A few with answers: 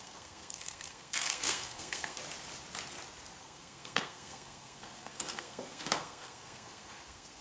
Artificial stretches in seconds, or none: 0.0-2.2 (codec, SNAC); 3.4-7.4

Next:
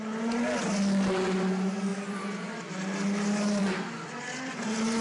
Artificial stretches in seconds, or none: none

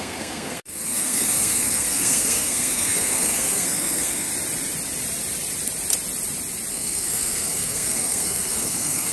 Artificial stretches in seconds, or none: 0.0-4.3 (codec, SNAC); 6.7-9.1

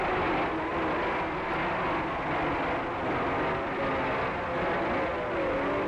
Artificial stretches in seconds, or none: none

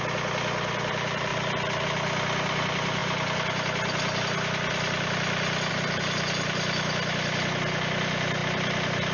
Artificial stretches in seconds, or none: none